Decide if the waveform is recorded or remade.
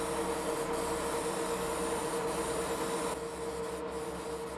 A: recorded